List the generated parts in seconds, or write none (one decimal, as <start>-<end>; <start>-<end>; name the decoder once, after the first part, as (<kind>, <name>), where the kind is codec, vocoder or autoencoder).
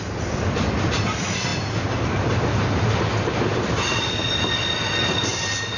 none